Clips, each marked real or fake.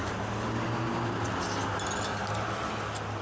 real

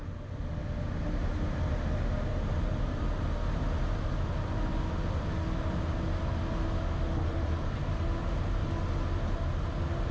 real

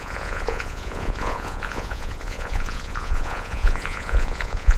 fake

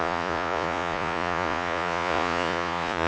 fake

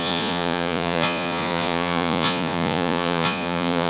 fake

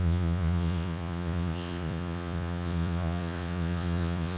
fake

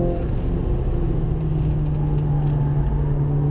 real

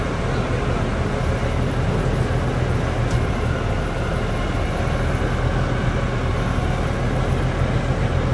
real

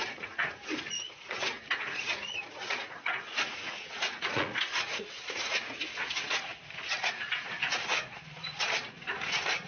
fake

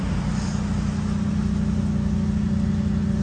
real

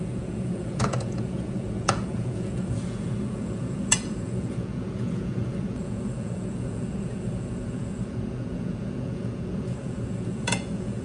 fake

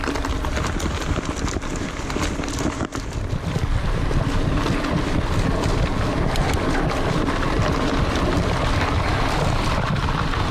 real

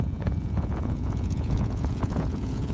fake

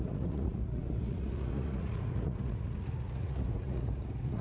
fake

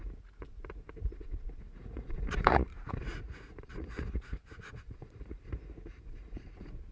fake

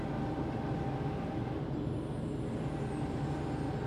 real